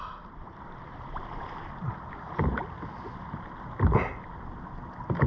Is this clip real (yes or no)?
yes